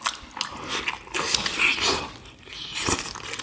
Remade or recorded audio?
recorded